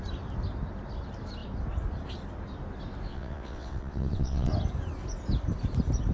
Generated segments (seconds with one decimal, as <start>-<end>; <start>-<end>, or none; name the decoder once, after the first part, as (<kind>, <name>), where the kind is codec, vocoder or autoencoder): 3.1-4.5 (vocoder, WaveNeXt)